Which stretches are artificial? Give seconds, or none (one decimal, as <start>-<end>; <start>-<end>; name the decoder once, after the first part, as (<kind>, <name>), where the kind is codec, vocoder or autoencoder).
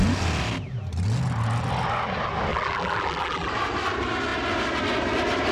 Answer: 2.5-3.5 (vocoder, BigVGAN v2)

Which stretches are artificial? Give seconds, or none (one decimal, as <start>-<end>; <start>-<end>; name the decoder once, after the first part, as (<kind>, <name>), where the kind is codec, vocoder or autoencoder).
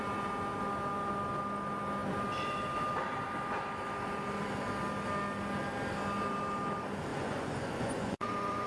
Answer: 7.1-8.7 (vocoder, Vocos)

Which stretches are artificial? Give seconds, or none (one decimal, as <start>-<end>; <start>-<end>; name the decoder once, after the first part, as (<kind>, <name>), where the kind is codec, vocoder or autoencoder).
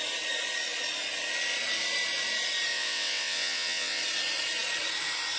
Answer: 2.7-4.0 (vocoder, WaveNeXt)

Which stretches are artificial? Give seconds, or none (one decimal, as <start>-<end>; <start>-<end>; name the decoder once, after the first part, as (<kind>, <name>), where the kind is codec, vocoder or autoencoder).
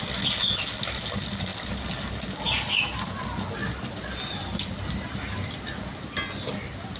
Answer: 3.6-5.5 (vocoder, BigVGAN v2)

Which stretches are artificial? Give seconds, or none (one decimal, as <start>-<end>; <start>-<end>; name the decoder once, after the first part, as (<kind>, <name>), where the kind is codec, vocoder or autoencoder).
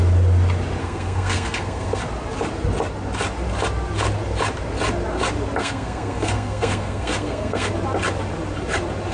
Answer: 0.8-2.0 (codec, SNAC); 5.6-7.7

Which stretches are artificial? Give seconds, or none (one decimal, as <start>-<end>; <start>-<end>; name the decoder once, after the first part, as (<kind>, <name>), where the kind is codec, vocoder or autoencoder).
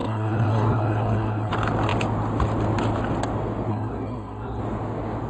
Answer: 0.0-1.5 (codec, SNAC); 3.7-4.6